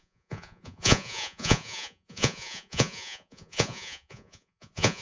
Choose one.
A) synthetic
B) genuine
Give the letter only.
A